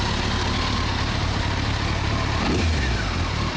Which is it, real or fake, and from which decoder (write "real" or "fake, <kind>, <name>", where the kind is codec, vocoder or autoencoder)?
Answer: real